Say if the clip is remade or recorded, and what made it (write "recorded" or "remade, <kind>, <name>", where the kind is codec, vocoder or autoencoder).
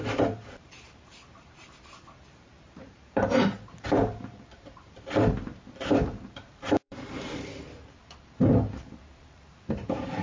remade, vocoder, BigVGAN v2